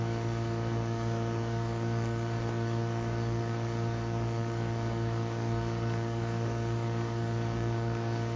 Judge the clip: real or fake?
fake